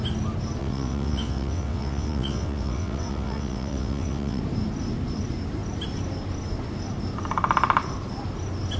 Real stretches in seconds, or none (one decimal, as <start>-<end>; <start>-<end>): 0.0-0.6; 4.4-8.8